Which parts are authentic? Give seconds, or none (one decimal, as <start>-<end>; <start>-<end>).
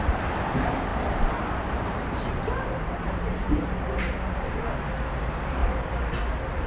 0.0-0.9; 4.9-6.7